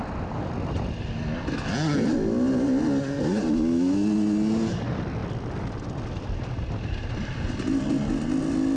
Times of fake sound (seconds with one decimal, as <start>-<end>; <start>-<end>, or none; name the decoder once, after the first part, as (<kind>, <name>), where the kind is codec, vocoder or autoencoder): none